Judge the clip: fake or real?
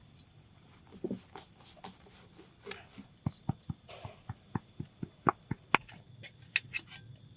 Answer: real